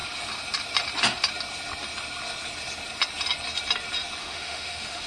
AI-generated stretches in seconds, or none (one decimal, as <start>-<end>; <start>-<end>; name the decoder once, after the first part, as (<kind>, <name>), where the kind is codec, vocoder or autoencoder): 4.2-5.1 (autoencoder, DAC-VAE)